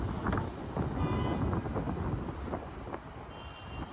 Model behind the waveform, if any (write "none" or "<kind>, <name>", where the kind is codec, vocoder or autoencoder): none